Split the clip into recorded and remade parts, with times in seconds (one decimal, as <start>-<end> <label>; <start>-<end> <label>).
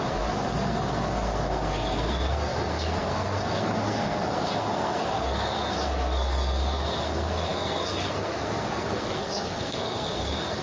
0.0-10.6 remade